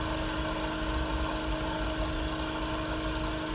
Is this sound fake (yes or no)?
no